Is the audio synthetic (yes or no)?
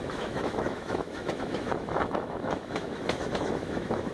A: yes